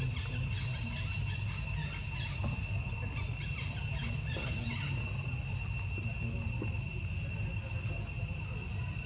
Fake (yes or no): no